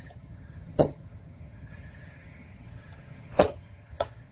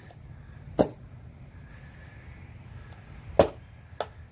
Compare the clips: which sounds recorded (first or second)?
second